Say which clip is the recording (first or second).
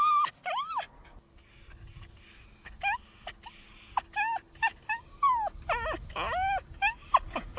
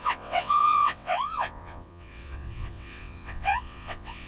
first